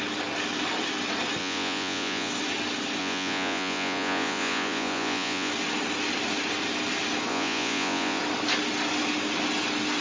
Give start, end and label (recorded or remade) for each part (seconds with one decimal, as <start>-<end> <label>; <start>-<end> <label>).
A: 0.0-1.4 recorded; 1.4-2.3 remade; 2.3-3.0 recorded; 3.0-5.5 remade; 5.5-7.3 recorded; 7.3-8.2 remade; 8.2-10.0 recorded